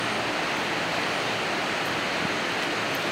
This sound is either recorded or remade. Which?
recorded